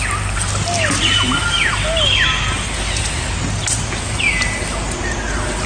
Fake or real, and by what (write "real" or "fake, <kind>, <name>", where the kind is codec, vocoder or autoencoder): real